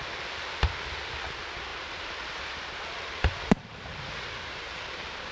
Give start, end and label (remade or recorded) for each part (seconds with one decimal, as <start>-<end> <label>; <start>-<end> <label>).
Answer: 0.0-1.7 recorded; 1.7-5.3 remade